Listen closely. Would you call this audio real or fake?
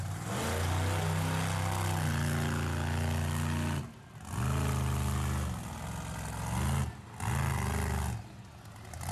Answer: real